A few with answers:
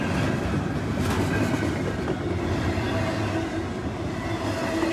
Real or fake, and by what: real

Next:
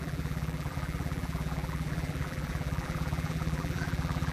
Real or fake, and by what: fake, vocoder, BigVGAN v2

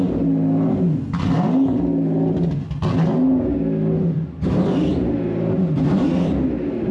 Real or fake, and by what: real